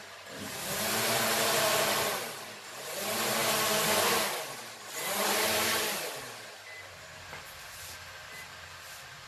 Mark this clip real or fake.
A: real